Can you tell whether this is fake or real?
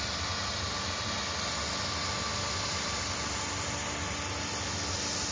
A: real